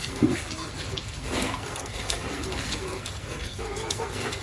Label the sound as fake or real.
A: fake